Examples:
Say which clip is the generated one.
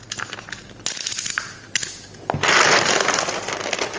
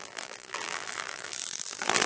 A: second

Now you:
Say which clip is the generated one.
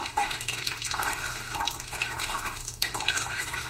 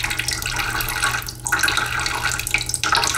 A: first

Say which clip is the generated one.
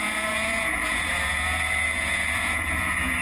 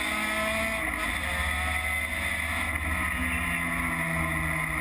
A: first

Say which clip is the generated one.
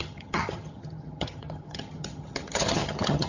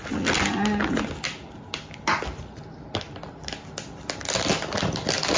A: first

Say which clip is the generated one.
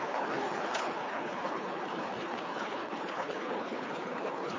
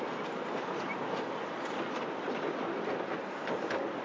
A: first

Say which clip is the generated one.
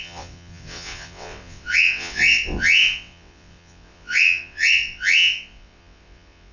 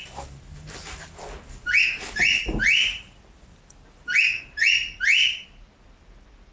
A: first